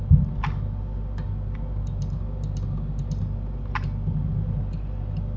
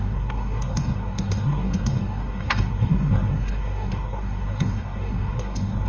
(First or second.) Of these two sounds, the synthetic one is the second